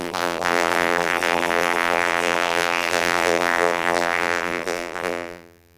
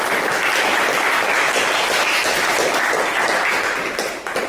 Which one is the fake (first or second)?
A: first